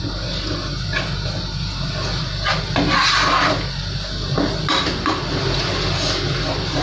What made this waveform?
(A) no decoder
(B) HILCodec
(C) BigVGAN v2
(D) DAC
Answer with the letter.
A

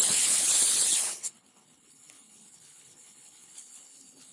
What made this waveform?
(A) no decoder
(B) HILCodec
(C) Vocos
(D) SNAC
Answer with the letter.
B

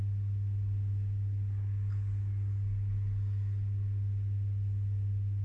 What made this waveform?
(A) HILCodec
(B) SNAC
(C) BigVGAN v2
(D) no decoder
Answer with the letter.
D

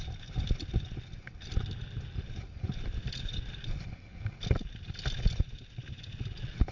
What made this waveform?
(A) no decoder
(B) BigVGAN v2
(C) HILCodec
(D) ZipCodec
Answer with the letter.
A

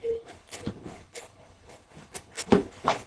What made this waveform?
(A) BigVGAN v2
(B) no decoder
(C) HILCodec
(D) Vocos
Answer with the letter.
C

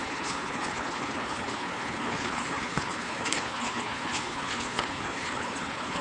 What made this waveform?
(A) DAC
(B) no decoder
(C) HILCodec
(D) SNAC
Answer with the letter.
C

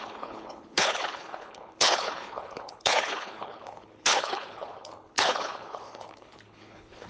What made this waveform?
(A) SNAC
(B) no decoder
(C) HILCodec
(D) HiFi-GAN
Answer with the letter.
C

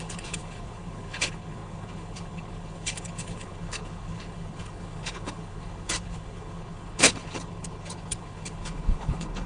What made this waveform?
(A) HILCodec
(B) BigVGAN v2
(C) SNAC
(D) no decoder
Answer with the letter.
A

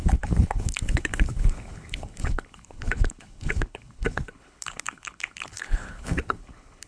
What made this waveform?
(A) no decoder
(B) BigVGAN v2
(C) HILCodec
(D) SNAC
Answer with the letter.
C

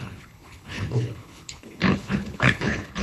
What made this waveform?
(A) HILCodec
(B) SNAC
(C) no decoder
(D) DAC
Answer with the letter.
A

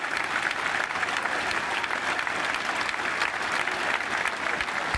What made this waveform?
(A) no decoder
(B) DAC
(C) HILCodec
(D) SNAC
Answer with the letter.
A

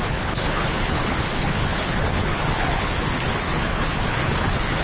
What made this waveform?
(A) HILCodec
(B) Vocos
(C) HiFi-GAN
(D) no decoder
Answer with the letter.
A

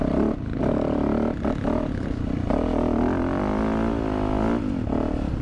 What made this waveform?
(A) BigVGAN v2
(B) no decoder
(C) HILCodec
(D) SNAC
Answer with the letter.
B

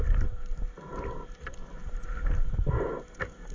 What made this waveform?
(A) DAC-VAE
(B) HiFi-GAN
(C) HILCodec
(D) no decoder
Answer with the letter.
D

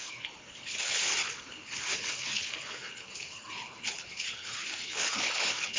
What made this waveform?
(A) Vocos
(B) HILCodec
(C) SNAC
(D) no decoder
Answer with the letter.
B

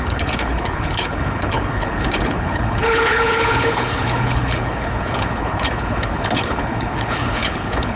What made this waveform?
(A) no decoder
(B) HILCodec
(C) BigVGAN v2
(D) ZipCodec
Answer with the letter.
B